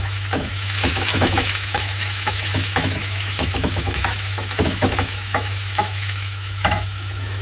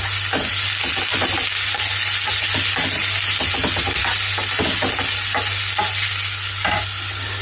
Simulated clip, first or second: first